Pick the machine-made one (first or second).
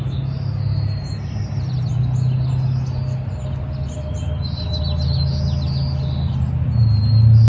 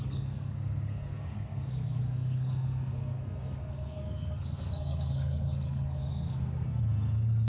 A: second